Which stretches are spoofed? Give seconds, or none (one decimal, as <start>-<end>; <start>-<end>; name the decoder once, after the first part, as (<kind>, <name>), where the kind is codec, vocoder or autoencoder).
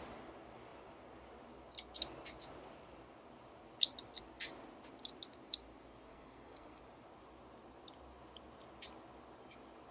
6.1-6.8 (codec, SNAC)